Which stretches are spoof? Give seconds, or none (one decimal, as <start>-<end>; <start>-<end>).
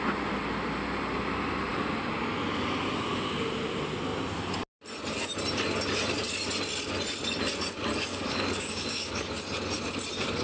7.9-9.3